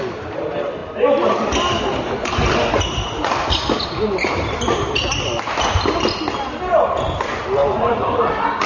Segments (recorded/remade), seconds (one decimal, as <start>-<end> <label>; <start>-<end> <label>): 0.0-3.8 recorded; 3.8-5.1 remade; 5.1-7.6 recorded; 7.6-8.2 remade; 8.2-8.7 recorded